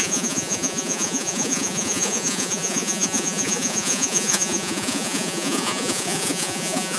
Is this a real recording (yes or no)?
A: no